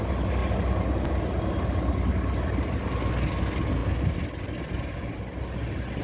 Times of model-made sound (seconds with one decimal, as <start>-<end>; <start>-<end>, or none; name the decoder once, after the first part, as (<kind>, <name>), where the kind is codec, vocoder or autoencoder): none